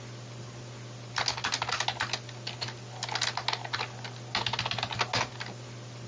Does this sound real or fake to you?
real